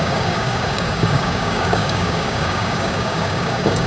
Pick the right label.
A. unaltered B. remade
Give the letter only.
B